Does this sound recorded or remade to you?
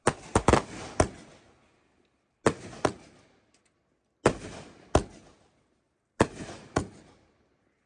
recorded